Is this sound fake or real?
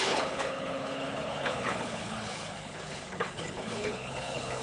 fake